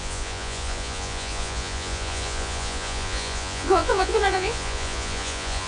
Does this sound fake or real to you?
fake